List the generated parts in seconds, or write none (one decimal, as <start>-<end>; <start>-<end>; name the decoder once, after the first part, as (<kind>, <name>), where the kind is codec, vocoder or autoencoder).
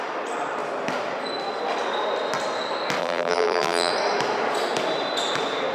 3.0-3.9 (vocoder, BigVGAN v2)